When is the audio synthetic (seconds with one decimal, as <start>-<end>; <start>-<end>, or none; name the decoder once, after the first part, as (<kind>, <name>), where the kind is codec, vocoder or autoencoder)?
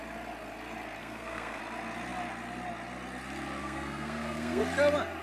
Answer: 1.0-1.6 (codec, SNAC); 3.6-4.6